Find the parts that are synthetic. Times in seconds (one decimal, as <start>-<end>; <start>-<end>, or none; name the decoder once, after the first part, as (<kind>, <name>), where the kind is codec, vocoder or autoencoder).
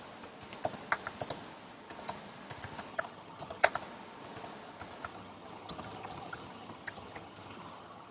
2.9-3.7 (vocoder, HiFi-GAN); 5.1-8.1